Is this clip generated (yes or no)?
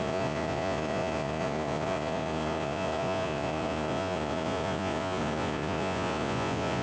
yes